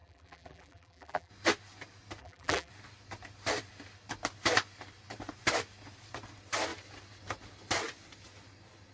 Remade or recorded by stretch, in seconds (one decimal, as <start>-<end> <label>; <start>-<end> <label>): 0.0-1.3 remade; 1.3-2.2 recorded; 2.2-2.7 remade; 2.7-8.9 recorded